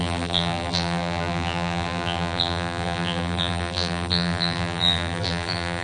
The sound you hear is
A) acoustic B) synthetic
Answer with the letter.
B